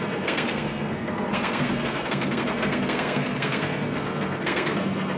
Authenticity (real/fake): fake